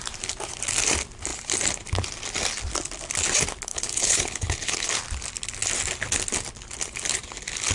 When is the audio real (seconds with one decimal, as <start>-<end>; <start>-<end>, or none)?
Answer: 0.0-3.7; 4.9-7.7